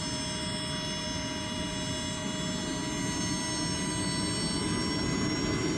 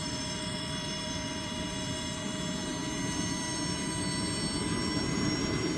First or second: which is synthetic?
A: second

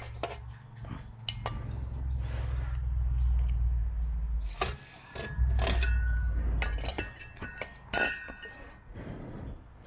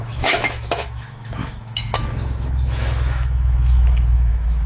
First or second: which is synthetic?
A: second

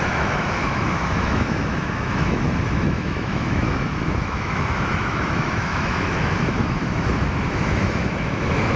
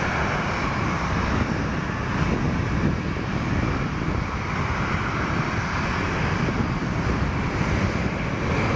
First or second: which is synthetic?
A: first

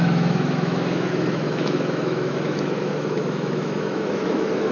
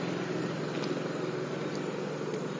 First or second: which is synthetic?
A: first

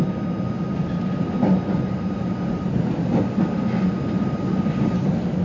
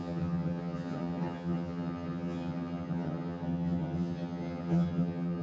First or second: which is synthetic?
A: second